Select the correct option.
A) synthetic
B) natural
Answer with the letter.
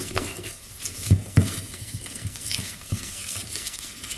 A